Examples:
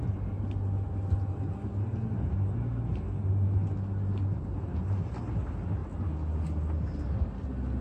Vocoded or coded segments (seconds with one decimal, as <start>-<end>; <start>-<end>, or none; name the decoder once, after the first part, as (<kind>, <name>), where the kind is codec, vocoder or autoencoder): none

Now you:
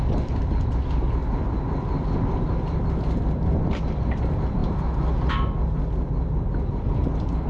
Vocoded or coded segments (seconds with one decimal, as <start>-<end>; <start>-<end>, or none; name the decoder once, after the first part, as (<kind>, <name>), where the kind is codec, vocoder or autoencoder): 0.0-1.2 (vocoder, BigVGAN v2); 2.9-4.6; 5.3-7.5

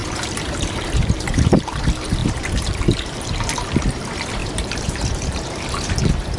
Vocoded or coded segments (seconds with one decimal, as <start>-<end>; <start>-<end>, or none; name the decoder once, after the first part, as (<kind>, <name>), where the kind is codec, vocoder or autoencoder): 0.0-1.6 (vocoder, BigVGAN v2); 2.2-2.8; 4.4-6.0